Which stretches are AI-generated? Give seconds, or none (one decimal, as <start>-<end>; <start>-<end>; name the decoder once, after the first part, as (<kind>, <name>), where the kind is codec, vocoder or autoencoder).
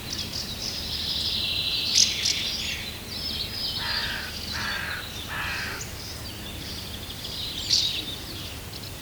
none